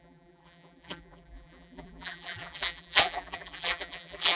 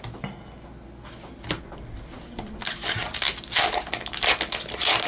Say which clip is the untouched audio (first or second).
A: second